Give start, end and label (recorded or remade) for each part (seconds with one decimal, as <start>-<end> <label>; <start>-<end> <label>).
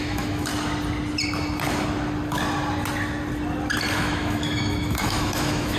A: 0.0-0.5 remade; 0.5-4.0 recorded; 4.0-5.8 remade